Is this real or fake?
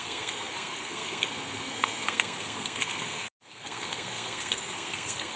fake